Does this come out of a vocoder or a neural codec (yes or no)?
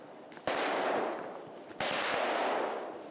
no